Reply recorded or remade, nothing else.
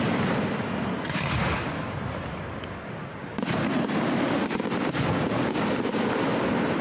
remade